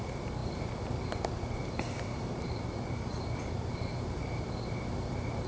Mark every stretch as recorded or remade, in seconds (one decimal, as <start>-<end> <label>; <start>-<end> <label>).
0.0-1.6 recorded; 1.6-3.4 remade; 3.4-3.9 recorded; 3.9-4.5 remade; 4.5-5.5 recorded